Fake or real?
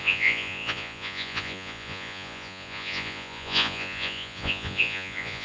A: fake